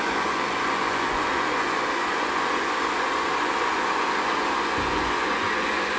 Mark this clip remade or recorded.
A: remade